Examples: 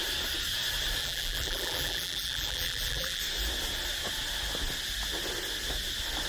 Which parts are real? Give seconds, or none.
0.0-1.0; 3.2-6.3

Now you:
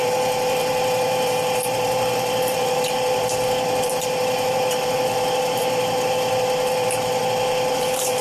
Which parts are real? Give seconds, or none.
7.2-7.7

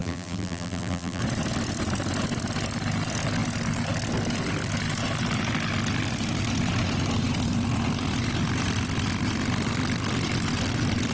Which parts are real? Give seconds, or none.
1.2-11.1

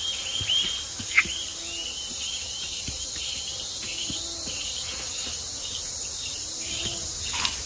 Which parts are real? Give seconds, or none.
0.0-7.7

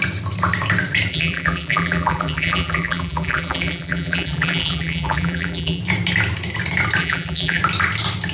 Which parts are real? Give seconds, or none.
0.0-1.1; 5.8-7.0; 7.6-8.3